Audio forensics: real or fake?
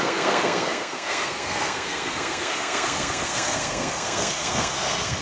fake